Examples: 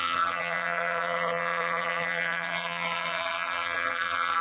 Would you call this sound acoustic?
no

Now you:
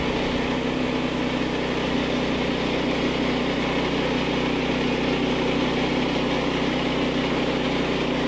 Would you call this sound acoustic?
yes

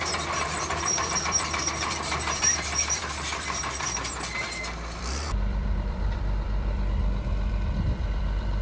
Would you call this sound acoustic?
no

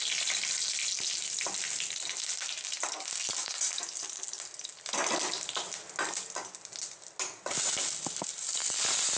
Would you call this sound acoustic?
yes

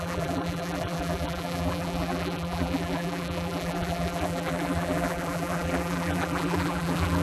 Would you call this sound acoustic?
no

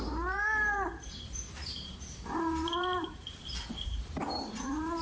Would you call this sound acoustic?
no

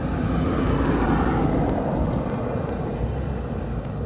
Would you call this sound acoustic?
yes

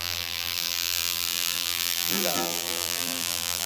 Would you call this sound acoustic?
no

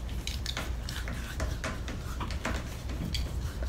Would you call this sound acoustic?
yes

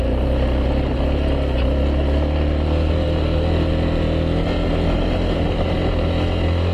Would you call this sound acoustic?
yes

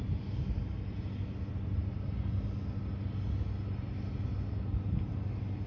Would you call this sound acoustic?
yes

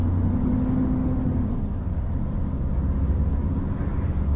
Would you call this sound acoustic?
yes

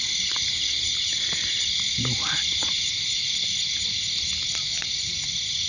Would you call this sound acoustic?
yes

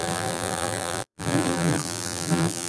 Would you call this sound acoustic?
no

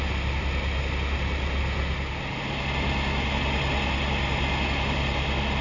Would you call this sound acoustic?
yes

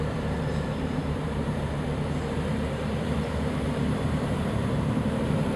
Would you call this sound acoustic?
no